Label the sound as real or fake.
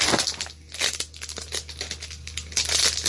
real